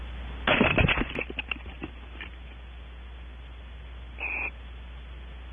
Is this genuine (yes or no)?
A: yes